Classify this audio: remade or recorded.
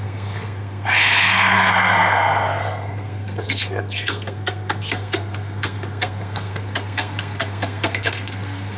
remade